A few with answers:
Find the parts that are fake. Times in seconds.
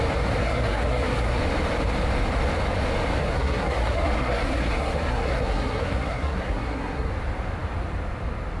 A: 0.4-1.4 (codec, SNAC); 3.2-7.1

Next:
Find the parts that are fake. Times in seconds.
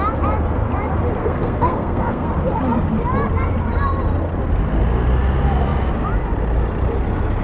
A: 1.2-2.3 (codec, SNAC)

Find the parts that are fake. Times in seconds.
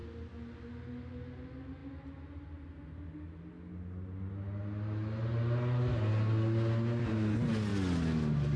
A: none